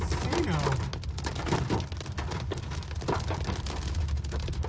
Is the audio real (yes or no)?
yes